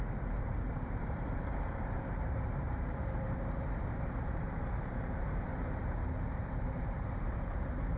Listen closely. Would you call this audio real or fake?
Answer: fake